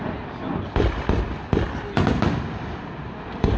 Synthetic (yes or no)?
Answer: no